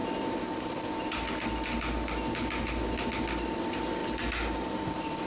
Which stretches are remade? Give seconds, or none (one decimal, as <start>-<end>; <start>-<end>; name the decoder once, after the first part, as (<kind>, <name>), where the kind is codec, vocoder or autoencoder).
none